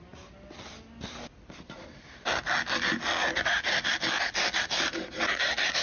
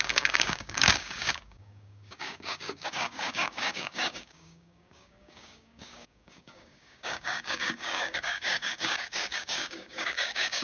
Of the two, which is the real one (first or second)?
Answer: first